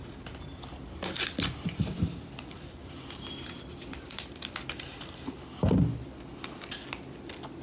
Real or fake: real